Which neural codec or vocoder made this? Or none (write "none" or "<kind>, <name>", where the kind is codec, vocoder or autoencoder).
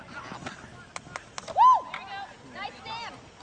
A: none